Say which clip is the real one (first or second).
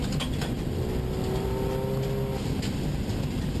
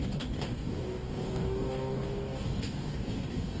first